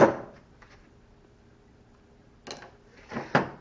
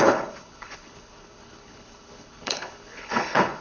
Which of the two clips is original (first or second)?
first